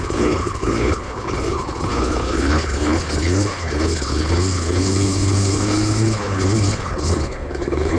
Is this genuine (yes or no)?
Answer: no